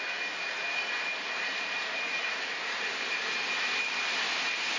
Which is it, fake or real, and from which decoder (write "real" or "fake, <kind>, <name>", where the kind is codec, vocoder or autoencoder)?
fake, vocoder, BigVGAN v2